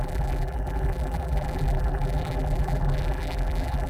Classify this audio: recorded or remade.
remade